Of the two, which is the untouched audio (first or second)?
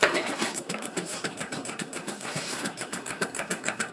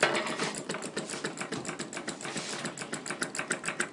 second